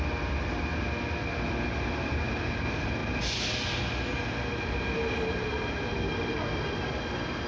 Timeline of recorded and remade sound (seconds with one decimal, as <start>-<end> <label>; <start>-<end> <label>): 0.0-7.5 recorded